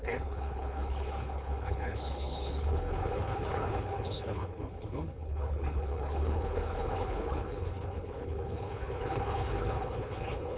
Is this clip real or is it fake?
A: fake